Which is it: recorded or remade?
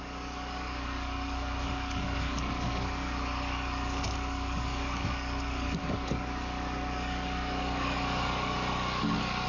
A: remade